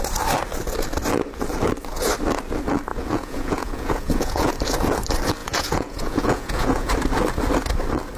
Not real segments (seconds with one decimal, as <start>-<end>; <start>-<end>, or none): 2.9-4.5; 5.4-6.9